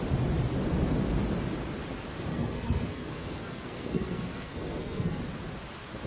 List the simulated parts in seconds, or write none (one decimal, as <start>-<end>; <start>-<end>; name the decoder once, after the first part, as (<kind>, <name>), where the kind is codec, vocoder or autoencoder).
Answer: 2.3-5.2 (codec, SNAC)